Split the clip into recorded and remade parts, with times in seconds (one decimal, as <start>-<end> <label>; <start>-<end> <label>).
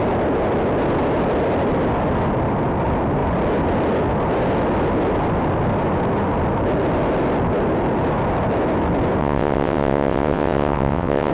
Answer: 0.0-9.2 recorded; 9.2-11.3 remade